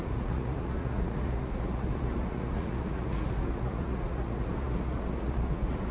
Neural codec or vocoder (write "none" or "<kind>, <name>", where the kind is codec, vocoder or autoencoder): vocoder, Vocos